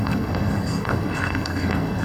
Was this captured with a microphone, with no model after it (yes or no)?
no